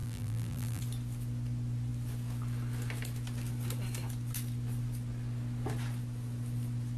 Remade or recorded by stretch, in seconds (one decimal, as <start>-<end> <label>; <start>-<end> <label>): 0.0-0.8 remade; 0.8-7.0 recorded